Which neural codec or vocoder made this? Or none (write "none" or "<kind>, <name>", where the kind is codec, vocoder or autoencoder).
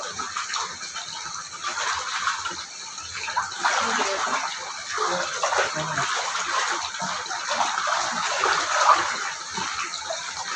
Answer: none